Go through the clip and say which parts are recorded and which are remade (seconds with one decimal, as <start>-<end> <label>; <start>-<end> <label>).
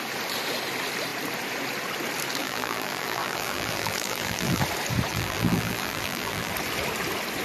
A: 0.0-2.4 recorded; 2.4-4.6 remade; 4.6-5.1 recorded; 5.1-6.5 remade; 6.5-7.4 recorded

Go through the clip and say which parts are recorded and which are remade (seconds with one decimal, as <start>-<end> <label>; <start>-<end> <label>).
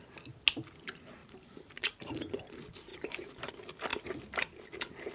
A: 0.0-1.2 recorded; 1.2-2.0 remade; 2.0-2.9 recorded; 2.9-3.5 remade; 3.5-5.1 recorded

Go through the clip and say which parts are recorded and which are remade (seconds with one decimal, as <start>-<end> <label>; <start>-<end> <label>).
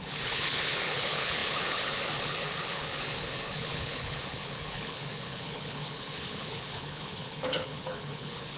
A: 0.0-8.6 remade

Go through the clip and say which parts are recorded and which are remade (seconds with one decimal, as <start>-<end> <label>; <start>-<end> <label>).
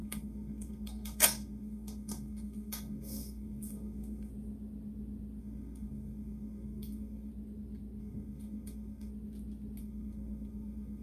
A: 0.0-4.3 remade; 4.3-5.4 recorded; 5.4-7.3 remade; 7.3-8.0 recorded; 8.0-9.1 remade; 9.1-9.8 recorded; 9.8-11.0 remade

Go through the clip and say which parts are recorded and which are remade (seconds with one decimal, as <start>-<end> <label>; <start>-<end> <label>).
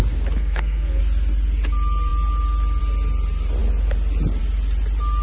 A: 0.0-0.4 recorded; 0.4-1.0 remade; 1.0-5.2 recorded